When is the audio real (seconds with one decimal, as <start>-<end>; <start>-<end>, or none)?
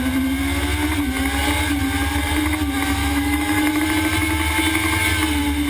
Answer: 0.0-3.0; 3.8-5.7